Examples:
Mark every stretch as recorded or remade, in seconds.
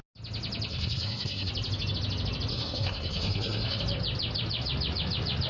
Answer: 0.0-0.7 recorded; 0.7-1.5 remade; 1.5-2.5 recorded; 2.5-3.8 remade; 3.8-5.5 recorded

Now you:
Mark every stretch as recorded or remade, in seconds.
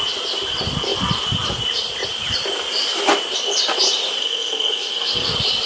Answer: 0.0-4.2 recorded; 4.2-5.3 remade; 5.3-5.7 recorded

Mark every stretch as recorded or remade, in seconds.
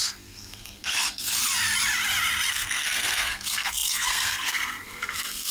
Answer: 0.0-1.4 remade; 1.4-2.5 recorded; 2.5-5.5 remade